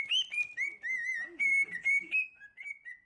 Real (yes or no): yes